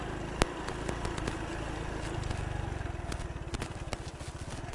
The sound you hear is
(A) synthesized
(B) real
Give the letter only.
B